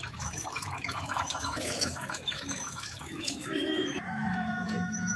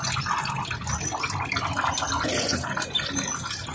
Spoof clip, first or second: first